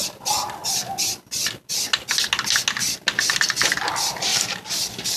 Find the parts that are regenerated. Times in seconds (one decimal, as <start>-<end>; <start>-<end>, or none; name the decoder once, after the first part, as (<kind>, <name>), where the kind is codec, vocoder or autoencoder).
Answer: none